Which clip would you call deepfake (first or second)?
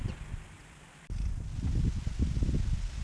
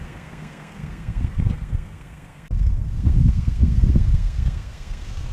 second